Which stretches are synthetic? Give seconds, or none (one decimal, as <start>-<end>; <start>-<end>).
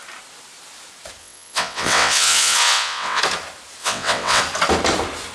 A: 1.2-3.2; 3.8-4.4